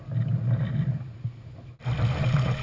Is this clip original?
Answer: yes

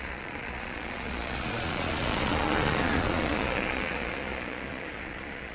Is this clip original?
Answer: no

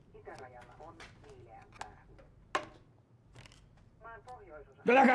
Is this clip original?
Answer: yes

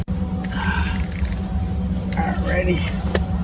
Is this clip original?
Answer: yes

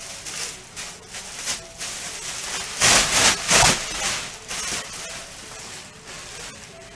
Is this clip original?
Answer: yes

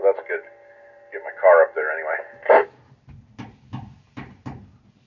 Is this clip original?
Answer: yes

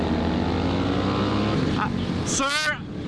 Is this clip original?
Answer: yes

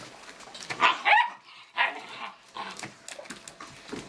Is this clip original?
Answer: yes